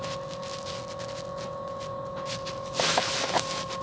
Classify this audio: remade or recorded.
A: recorded